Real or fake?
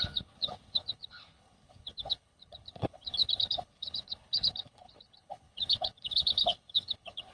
fake